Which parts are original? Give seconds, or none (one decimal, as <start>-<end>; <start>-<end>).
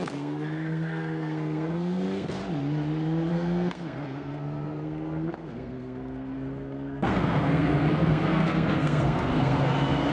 2.4-3.3